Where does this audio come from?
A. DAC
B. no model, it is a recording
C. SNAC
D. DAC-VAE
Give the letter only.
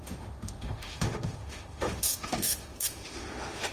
D